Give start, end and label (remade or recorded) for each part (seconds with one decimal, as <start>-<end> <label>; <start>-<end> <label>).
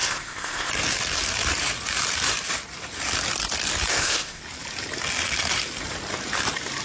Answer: 0.0-0.7 remade; 0.7-3.9 recorded; 3.9-4.4 remade; 4.4-6.8 recorded